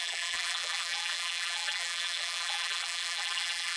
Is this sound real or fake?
fake